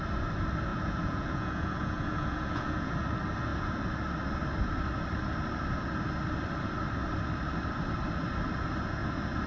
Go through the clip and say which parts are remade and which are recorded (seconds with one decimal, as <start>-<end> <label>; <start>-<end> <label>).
0.0-0.7 recorded; 0.7-2.9 remade; 2.9-9.5 recorded